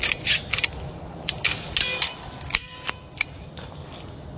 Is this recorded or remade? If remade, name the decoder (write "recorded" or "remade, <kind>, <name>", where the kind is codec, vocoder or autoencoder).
recorded